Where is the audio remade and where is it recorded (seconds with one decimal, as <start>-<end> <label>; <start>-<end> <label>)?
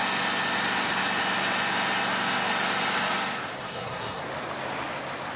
0.0-3.6 recorded; 3.6-4.2 remade; 4.2-5.4 recorded